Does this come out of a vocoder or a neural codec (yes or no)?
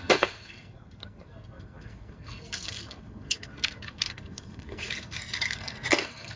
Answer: yes